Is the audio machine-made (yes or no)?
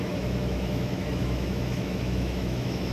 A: yes